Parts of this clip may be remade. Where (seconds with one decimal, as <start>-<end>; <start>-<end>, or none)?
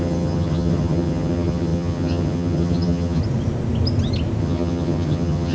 0.0-3.2; 4.4-5.5